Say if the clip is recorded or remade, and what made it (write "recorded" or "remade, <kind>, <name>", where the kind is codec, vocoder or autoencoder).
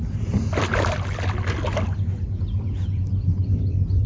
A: recorded